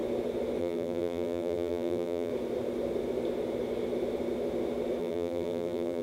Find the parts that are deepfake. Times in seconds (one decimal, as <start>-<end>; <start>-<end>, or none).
0.6-2.3; 5.0-6.0